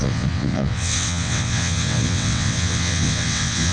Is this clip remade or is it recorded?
remade